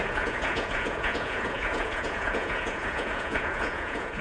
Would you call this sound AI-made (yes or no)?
yes